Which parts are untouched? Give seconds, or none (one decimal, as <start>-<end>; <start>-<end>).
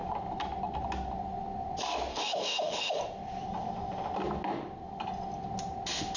0.0-2.1; 3.0-6.2